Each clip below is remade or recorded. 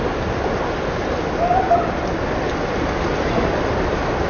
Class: recorded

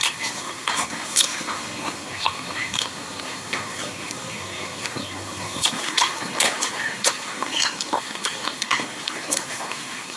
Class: remade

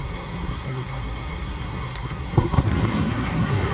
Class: remade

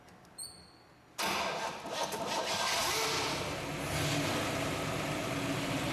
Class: recorded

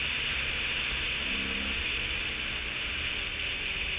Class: recorded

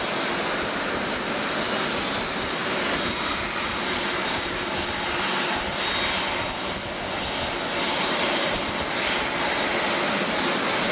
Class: recorded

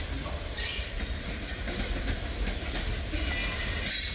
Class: recorded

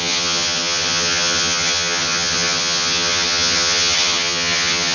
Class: remade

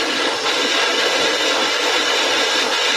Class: recorded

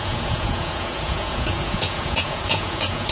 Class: remade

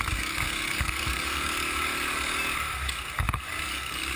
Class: remade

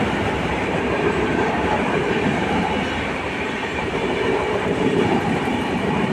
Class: remade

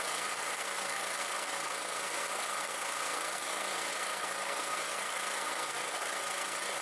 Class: remade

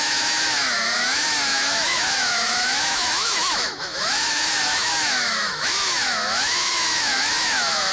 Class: remade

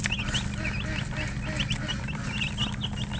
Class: recorded